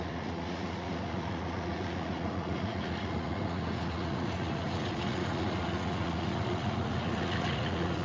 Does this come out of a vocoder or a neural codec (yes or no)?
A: yes